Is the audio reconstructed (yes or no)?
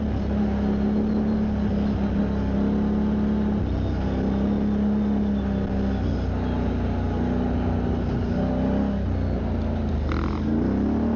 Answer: no